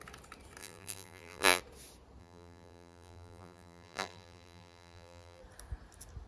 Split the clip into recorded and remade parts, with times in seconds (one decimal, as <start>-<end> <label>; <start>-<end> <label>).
0.0-0.6 recorded; 0.6-1.6 remade; 1.6-2.2 recorded; 2.2-5.4 remade; 5.4-6.3 recorded